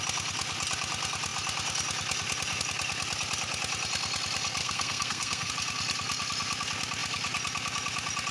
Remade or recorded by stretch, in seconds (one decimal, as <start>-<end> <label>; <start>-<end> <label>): 0.0-4.6 recorded; 4.6-5.5 remade; 5.5-8.3 recorded